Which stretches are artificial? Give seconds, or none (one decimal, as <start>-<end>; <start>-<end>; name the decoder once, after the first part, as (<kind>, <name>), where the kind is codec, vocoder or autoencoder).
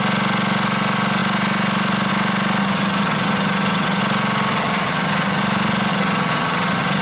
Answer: 2.6-4.0 (vocoder, HiFi-GAN); 4.5-5.4; 5.9-7.0